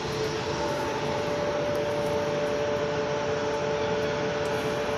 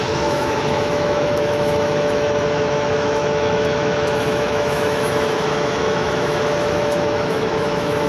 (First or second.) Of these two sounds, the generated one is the second